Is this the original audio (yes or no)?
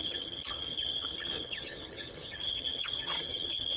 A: no